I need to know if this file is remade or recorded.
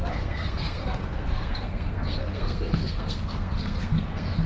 remade